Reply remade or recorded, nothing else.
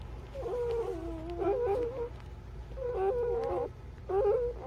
recorded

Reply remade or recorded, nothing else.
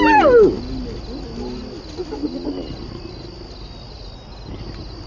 recorded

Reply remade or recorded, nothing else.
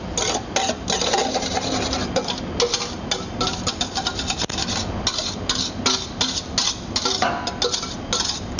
recorded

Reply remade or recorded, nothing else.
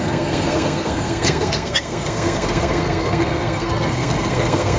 remade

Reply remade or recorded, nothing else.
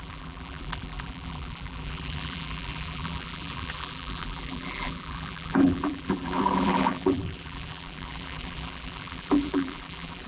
remade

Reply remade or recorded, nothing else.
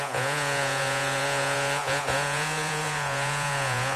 remade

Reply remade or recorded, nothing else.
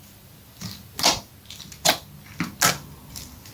recorded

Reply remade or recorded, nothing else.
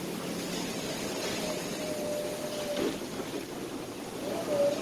recorded